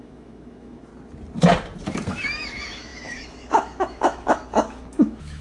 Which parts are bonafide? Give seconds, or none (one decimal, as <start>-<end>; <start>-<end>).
0.9-2.1